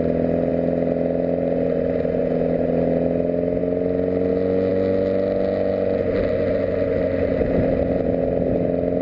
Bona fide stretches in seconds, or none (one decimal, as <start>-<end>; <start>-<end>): 0.0-9.0